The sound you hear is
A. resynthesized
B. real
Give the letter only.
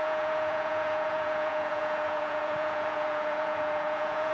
A